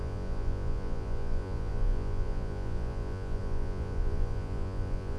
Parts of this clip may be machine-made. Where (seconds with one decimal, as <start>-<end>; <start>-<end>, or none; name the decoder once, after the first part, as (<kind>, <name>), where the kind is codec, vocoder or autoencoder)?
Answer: 0.0-5.2 (vocoder, Vocos)